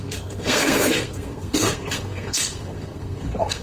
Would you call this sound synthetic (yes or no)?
yes